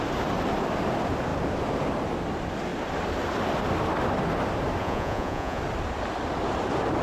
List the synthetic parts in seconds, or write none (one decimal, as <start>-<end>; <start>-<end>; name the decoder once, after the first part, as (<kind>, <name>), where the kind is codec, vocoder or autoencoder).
4.8-5.6 (vocoder, Vocos)